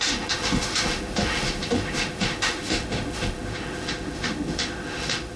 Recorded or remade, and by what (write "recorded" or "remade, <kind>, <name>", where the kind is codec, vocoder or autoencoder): remade, autoencoder, DAC-VAE